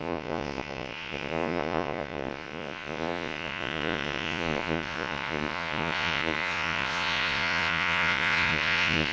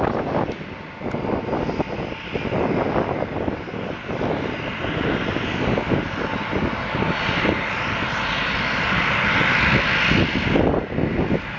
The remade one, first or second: first